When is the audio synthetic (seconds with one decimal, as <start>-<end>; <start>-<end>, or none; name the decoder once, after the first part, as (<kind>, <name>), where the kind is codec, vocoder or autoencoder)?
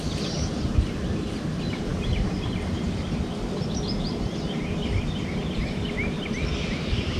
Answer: none